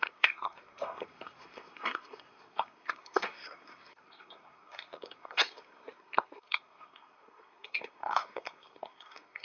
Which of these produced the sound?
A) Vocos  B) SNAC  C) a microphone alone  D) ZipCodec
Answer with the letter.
B